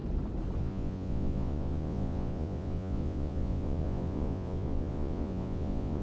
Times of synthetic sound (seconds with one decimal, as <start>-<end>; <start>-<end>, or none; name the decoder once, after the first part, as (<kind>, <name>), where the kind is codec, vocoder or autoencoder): 0.6-6.0 (vocoder, Vocos)